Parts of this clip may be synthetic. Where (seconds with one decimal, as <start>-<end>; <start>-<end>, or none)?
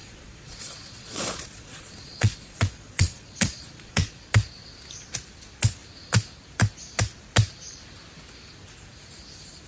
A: 0.0-4.2